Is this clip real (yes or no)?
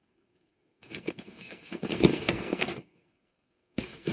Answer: no